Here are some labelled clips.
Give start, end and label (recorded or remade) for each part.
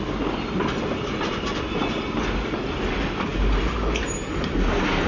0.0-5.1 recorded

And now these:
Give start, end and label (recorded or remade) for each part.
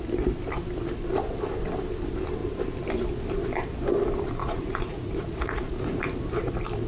0.0-4.4 recorded; 4.4-6.0 remade; 6.0-6.9 recorded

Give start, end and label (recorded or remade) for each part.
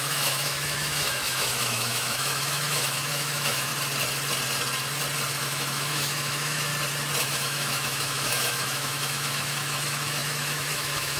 0.0-3.7 remade; 3.7-5.4 recorded; 5.4-6.7 remade; 6.7-7.2 recorded; 7.2-11.2 remade